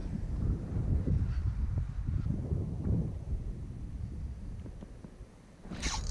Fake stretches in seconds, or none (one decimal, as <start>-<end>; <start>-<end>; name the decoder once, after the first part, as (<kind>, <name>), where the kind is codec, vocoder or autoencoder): 0.0-3.7 (vocoder, BigVGAN v2); 5.2-6.1